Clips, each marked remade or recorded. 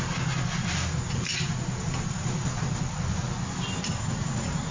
recorded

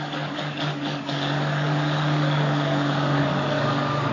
remade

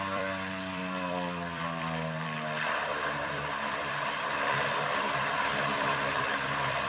remade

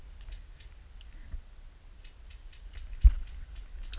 recorded